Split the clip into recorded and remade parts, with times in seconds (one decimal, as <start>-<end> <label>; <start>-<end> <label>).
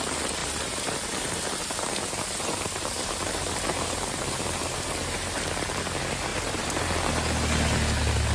0.0-0.4 recorded; 0.4-5.4 remade; 5.4-6.3 recorded; 6.3-6.8 remade; 6.8-8.3 recorded